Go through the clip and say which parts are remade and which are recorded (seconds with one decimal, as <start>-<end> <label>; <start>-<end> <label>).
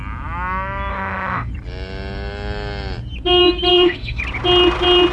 0.0-0.9 recorded; 0.9-1.5 remade; 1.5-3.7 recorded; 3.7-4.2 remade; 4.2-5.1 recorded